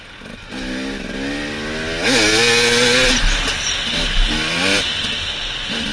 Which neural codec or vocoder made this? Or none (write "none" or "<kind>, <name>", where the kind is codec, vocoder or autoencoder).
none